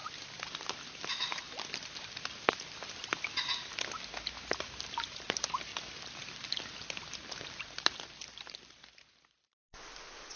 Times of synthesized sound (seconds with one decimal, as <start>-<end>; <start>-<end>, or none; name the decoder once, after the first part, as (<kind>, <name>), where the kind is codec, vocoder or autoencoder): 0.0-0.9 (vocoder, BigVGAN v2); 1.3-3.0; 5.7-9.8